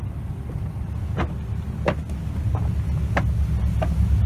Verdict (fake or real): real